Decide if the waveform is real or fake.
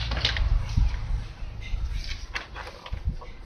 real